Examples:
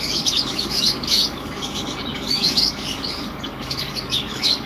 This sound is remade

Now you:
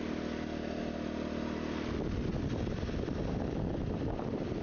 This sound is recorded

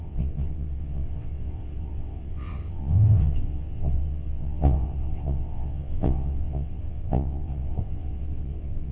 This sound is remade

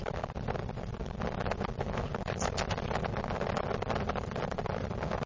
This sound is recorded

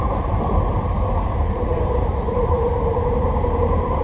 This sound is remade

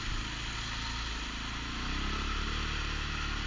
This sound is recorded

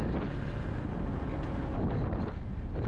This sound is recorded